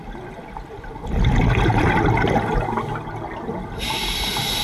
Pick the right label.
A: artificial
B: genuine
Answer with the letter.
B